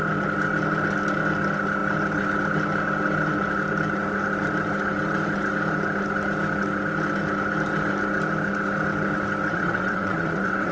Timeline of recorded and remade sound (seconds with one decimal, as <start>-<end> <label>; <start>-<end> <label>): 0.0-9.5 recorded; 9.5-10.7 remade